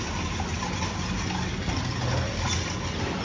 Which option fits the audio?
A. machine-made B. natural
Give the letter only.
B